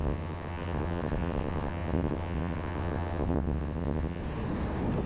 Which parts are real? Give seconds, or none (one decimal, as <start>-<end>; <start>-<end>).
4.2-5.1